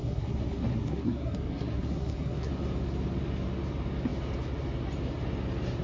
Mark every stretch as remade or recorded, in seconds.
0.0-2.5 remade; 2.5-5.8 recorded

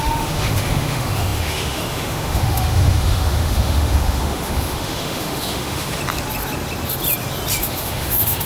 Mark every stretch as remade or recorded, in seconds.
0.0-6.0 remade; 6.0-7.6 recorded; 7.6-8.5 remade

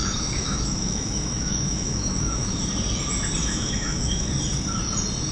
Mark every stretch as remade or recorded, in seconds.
0.0-2.6 remade; 2.6-3.4 recorded; 3.4-4.3 remade; 4.3-5.3 recorded

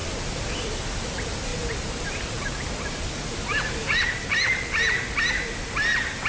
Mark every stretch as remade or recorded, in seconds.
0.0-6.3 recorded

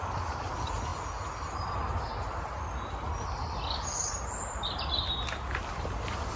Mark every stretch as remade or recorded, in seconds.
0.0-0.9 remade; 0.9-1.5 recorded; 1.5-2.1 remade; 2.1-5.7 recorded; 5.7-6.4 remade

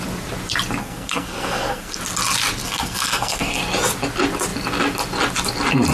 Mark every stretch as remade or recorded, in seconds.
0.0-0.8 recorded; 0.8-2.0 remade; 2.0-2.6 recorded; 2.6-3.6 remade; 3.6-5.9 recorded